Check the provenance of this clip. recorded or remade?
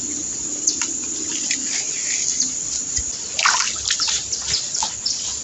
recorded